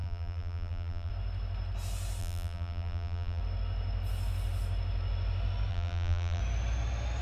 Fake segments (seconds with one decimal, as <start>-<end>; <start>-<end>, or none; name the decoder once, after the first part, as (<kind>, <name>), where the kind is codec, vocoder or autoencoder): 0.0-1.1 (vocoder, BigVGAN v2); 2.2-3.4; 5.7-6.4

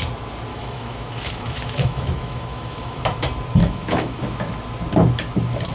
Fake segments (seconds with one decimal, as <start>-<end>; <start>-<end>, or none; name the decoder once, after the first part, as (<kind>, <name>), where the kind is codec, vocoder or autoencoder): 0.5-3.0 (autoencoder, DAC-VAE); 3.6-4.2